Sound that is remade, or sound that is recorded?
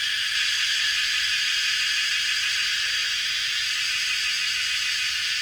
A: remade